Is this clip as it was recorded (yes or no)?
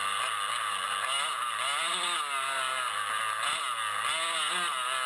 yes